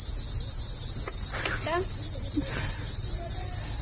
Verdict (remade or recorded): recorded